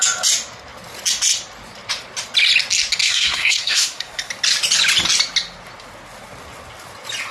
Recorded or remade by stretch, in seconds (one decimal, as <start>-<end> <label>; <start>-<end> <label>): 0.0-3.0 recorded; 3.0-4.3 remade; 4.3-7.3 recorded